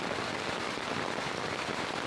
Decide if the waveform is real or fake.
real